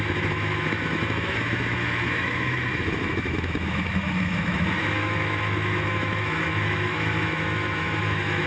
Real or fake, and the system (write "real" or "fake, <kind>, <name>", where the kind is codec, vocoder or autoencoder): fake, autoencoder, DAC-VAE